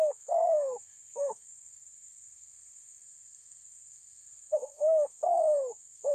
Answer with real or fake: fake